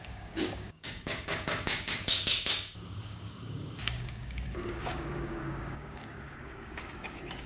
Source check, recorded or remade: remade